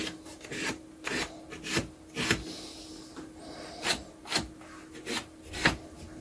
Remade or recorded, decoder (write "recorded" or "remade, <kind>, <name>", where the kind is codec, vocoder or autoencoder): recorded